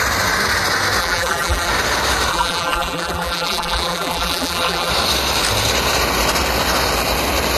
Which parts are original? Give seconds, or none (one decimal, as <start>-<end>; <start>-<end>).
0.0-1.0; 1.7-2.3; 4.9-7.6